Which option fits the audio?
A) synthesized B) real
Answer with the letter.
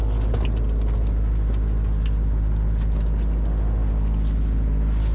B